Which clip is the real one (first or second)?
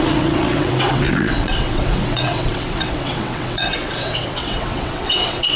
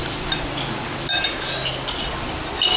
second